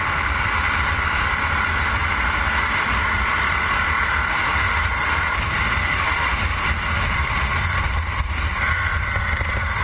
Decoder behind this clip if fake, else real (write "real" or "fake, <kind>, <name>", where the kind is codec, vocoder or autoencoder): fake, vocoder, BigVGAN v2